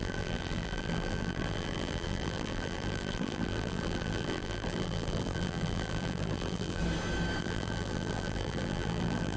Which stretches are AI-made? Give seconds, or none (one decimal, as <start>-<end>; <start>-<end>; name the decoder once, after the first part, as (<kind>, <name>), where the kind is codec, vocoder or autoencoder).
0.0-6.8 (vocoder, BigVGAN v2); 7.4-9.4